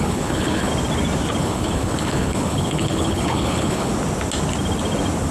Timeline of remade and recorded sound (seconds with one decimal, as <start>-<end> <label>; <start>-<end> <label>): 0.0-0.7 remade; 0.7-1.4 recorded; 1.4-3.9 remade; 3.9-5.3 recorded